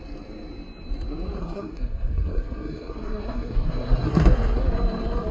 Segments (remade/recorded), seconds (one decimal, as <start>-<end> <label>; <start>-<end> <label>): 0.0-1.4 recorded; 1.4-4.6 remade; 4.6-5.3 recorded